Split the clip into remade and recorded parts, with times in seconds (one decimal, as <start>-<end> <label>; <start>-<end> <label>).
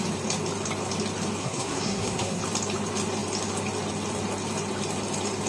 0.0-1.4 recorded; 1.4-2.4 remade; 2.4-5.5 recorded